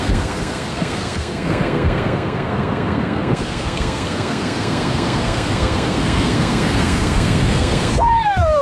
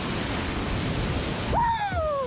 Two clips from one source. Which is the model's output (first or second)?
first